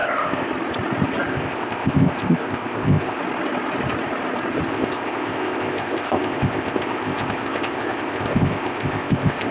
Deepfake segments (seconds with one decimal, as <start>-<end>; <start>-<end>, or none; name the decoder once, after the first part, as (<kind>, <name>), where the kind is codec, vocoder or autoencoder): 0.0-0.5 (codec, ZipCodec); 1.3-3.2; 4.7-9.5